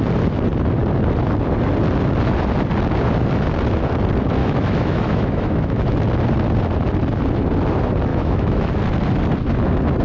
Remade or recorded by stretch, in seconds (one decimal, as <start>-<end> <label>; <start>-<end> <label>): 0.0-4.4 recorded; 4.4-5.9 remade; 5.9-8.1 recorded; 8.1-8.7 remade; 8.7-10.0 recorded